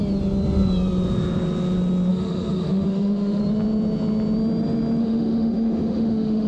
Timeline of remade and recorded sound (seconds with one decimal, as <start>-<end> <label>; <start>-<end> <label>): 0.0-2.1 recorded; 2.1-3.4 remade; 3.4-5.0 recorded; 5.0-6.5 remade